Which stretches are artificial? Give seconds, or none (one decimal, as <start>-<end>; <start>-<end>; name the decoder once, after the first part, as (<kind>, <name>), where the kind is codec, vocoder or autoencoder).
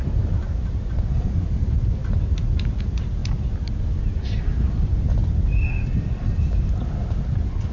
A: 0.0-2.0 (vocoder, BigVGAN v2); 2.8-3.2; 3.8-5.2